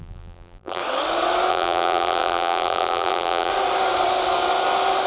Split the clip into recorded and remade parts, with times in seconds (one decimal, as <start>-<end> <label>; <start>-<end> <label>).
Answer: 0.0-0.8 remade; 0.8-1.5 recorded; 1.5-3.5 remade; 3.5-5.1 recorded